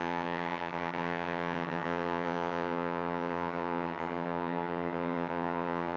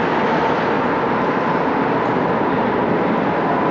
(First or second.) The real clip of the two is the second